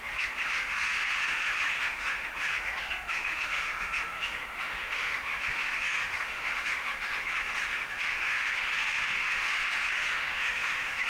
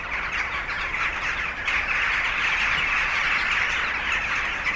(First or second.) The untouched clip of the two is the second